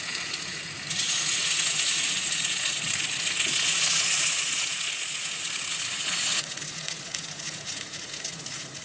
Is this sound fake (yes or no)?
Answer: yes